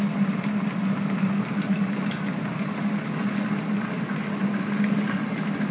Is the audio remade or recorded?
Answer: recorded